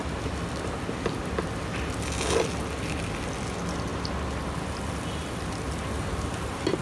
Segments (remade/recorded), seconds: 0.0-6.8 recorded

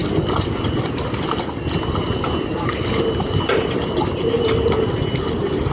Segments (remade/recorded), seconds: 0.0-5.7 recorded

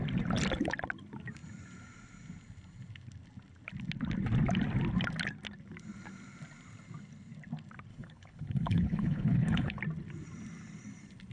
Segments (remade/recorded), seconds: 0.0-7.9 recorded; 7.9-9.8 remade; 9.8-11.3 recorded